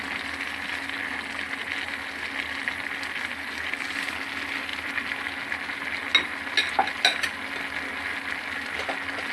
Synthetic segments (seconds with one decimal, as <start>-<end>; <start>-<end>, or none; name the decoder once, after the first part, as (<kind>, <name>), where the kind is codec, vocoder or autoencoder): none